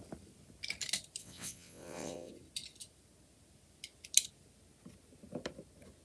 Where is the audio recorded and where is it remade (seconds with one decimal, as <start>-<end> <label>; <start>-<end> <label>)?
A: 0.0-1.2 recorded; 1.2-2.3 remade; 2.3-6.0 recorded